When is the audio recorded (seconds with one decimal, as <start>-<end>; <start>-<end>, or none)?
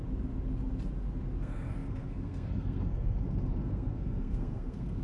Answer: 0.0-1.4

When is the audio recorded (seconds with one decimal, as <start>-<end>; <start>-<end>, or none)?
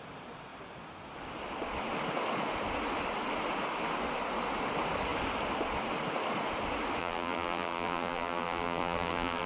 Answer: 0.0-7.0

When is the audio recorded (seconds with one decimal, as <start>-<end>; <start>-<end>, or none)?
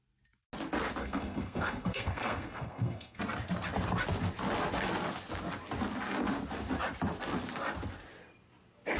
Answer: 0.0-1.0; 3.2-9.0